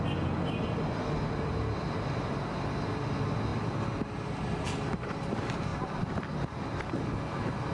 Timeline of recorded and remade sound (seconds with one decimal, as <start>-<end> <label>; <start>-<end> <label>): 0.0-7.7 recorded